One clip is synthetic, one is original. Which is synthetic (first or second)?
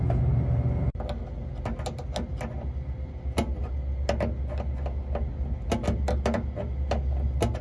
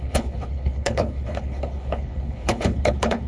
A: second